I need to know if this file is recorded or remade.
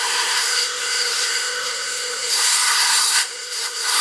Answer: remade